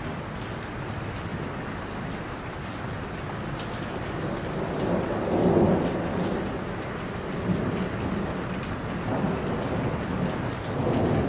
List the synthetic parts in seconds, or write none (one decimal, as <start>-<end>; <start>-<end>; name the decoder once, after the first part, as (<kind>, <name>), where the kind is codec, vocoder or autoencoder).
none